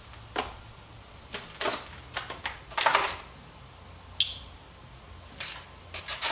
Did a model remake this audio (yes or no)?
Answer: no